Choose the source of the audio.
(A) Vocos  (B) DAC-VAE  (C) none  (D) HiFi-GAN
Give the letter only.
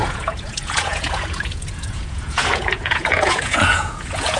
A